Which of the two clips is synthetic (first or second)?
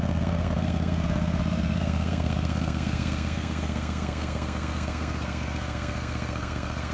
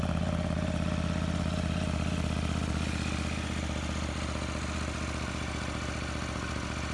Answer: first